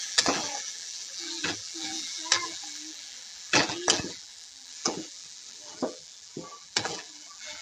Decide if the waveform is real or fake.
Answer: fake